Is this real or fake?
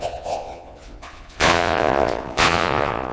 fake